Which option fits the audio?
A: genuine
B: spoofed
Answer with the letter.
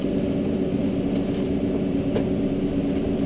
A